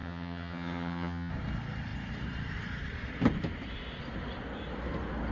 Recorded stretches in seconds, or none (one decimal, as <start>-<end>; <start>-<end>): 1.3-5.3